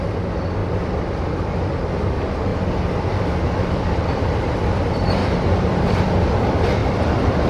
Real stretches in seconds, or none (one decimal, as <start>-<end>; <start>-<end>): 0.0-0.6; 1.4-5.2; 6.1-6.8